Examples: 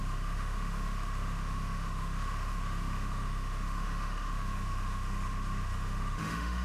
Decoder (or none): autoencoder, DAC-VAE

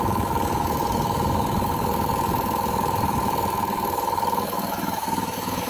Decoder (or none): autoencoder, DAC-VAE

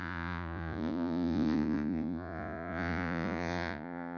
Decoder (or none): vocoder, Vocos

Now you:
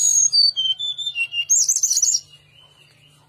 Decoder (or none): none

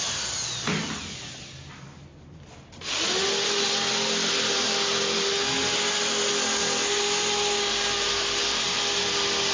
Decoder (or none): none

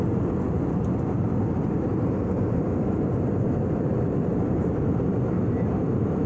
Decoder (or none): none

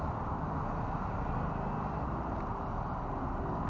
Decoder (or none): none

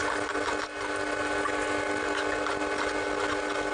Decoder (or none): none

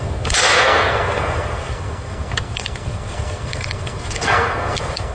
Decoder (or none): codec, SNAC